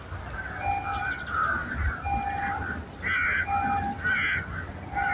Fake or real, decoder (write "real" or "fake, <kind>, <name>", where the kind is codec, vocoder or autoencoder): real